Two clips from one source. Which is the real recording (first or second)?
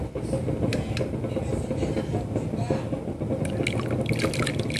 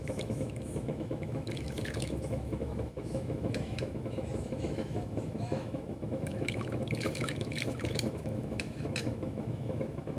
first